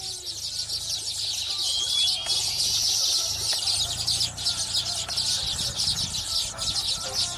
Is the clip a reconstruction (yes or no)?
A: no